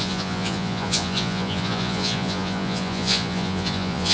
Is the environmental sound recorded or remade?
remade